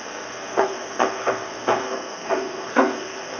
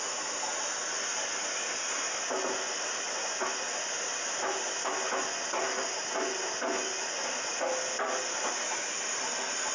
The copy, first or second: first